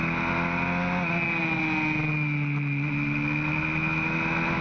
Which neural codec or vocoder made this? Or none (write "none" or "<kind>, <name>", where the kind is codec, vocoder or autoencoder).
none